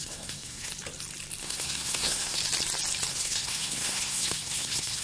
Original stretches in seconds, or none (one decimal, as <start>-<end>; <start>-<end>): 0.7-1.4; 2.4-3.1